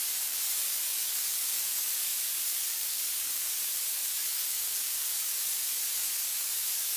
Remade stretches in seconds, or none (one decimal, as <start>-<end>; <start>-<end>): 0.0-7.0